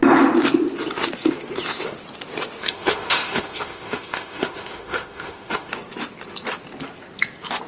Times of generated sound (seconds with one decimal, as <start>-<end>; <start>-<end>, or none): 2.6-5.7